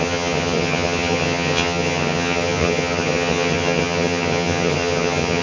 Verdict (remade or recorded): remade